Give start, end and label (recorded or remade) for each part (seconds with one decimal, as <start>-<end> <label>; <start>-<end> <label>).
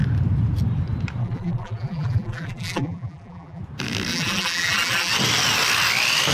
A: 0.0-1.2 recorded; 1.2-3.6 remade; 3.6-4.1 recorded; 4.1-5.1 remade; 5.1-6.3 recorded